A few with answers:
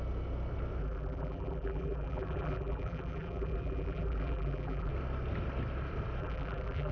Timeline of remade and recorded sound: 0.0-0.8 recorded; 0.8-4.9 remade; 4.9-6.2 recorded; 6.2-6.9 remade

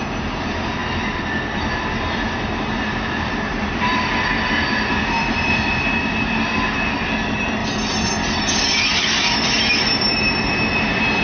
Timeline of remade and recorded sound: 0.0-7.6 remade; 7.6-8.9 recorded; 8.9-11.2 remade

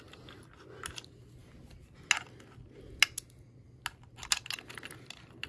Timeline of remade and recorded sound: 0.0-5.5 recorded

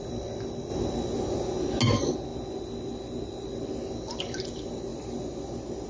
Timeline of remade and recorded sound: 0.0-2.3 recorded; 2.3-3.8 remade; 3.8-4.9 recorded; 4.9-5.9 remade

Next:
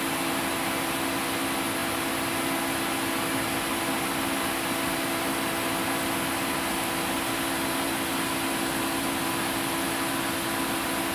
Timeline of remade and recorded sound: 0.0-11.1 recorded

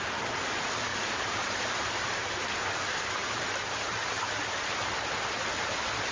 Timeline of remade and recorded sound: 0.0-0.9 recorded; 0.9-2.7 remade; 2.7-3.2 recorded; 3.2-4.0 remade; 4.0-6.1 recorded

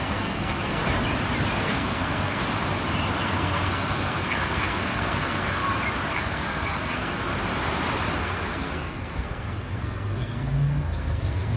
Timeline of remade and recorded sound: 0.0-0.8 remade; 0.8-1.6 recorded; 1.6-2.4 remade; 2.4-3.2 recorded; 3.2-5.6 remade; 5.6-6.1 recorded; 6.1-7.3 remade; 7.3-8.2 recorded; 8.2-11.6 remade